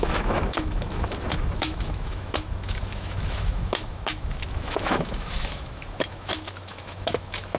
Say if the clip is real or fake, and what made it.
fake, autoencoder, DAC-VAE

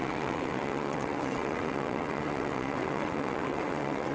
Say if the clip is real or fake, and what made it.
fake, vocoder, WaveNeXt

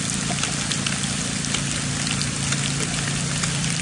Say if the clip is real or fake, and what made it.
real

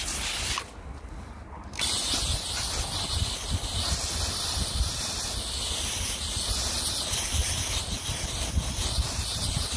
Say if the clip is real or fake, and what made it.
real